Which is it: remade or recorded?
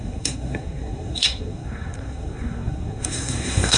remade